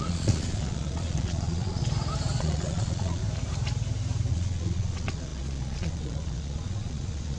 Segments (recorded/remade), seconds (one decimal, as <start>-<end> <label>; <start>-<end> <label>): 0.0-1.8 remade; 1.8-2.4 recorded; 2.4-3.2 remade; 3.2-4.3 recorded; 4.3-7.4 remade